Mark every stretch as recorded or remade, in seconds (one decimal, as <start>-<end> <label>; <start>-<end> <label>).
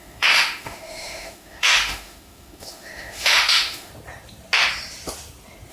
0.0-3.9 remade; 3.9-5.7 recorded